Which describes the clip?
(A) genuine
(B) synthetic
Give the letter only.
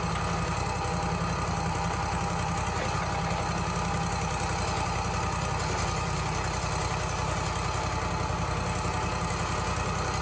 A